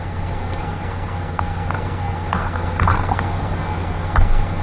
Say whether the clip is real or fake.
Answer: fake